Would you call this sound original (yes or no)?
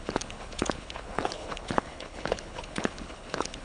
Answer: no